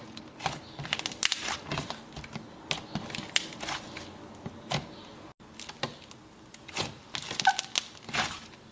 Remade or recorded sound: recorded